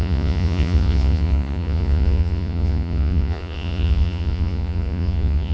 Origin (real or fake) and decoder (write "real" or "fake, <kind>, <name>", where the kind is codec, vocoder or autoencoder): fake, vocoder, Vocos